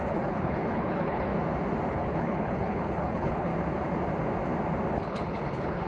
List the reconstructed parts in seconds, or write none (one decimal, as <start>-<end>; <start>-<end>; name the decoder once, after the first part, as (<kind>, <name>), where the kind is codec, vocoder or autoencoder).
0.0-1.3 (codec, HILCodec); 1.9-3.5; 4.9-5.9